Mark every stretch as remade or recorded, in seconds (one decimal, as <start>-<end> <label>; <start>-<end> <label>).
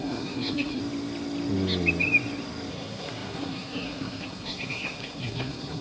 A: 0.0-0.8 remade; 0.8-2.7 recorded; 2.7-5.8 remade